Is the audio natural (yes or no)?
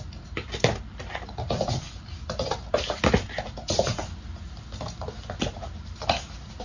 yes